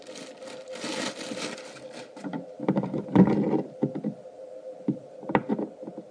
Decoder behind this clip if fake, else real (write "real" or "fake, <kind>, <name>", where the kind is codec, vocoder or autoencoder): fake, vocoder, BigVGAN v2